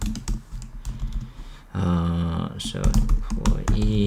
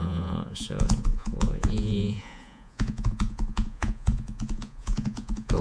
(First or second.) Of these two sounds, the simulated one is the second